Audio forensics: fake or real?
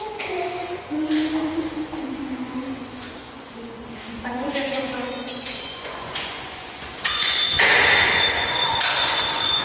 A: fake